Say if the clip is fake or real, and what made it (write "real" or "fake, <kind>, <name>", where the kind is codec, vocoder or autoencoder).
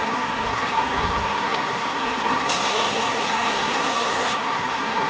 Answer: fake, codec, SNAC